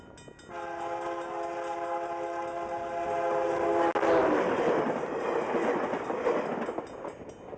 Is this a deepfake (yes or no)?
no